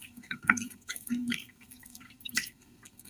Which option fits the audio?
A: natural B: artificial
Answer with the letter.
B